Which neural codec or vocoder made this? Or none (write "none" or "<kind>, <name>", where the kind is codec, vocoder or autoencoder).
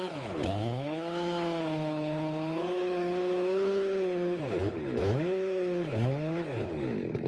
codec, HILCodec